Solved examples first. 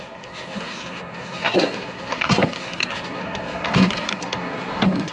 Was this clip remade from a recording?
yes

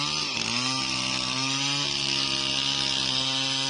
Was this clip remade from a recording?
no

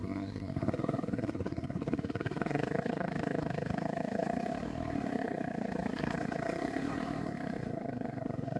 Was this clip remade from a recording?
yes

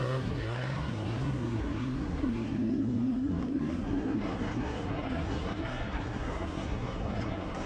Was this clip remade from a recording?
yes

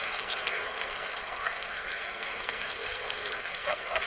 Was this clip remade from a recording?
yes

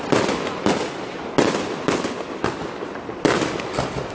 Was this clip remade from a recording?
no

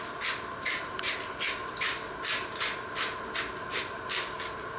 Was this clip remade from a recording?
no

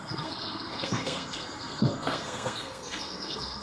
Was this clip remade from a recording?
yes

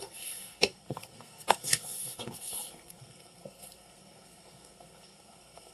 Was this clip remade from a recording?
yes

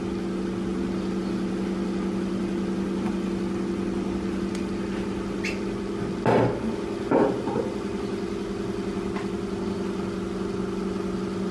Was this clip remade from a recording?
no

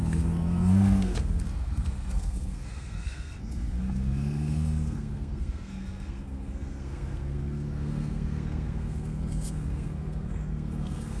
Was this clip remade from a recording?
yes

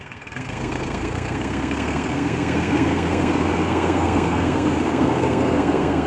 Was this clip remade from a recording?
yes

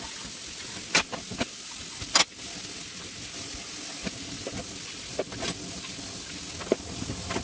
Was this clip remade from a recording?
no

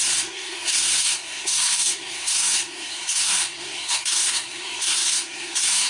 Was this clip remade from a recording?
yes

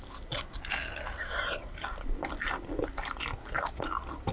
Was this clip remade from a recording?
no